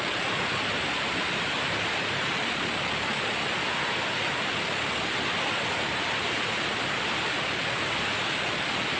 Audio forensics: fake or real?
real